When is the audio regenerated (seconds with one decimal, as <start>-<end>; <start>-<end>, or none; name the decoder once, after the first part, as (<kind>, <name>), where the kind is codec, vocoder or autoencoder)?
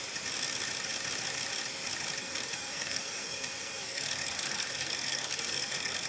2.2-6.1 (codec, SNAC)